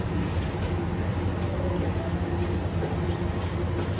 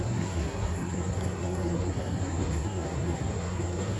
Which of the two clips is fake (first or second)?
second